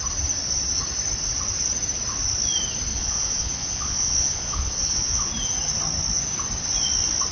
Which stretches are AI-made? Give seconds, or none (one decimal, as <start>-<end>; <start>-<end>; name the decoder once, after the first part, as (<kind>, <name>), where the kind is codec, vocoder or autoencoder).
2.9-5.3 (vocoder, Vocos)